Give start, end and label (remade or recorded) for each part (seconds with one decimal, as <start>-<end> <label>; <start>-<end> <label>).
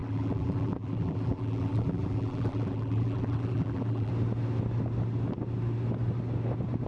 0.0-4.1 remade; 4.1-6.9 recorded